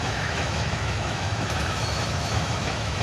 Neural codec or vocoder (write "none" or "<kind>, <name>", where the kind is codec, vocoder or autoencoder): autoencoder, DAC-VAE